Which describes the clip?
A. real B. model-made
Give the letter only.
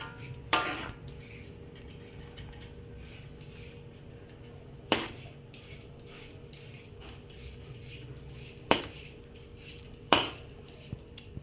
B